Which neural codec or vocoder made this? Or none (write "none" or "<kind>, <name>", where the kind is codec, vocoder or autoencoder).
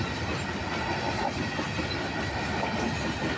none